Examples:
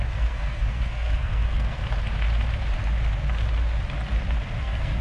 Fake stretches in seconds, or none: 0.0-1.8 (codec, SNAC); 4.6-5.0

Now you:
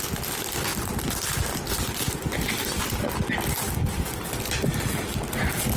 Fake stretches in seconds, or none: none

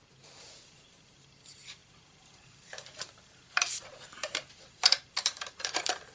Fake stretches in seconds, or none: 0.0-6.1 (vocoder, BigVGAN v2)

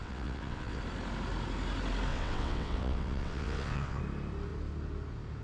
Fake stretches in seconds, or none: 0.0-0.8 (vocoder, WaveNeXt); 2.1-4.0

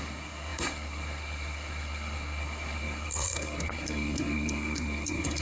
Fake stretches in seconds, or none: 0.0-5.4 (codec, SNAC)